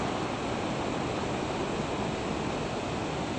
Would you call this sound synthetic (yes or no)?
no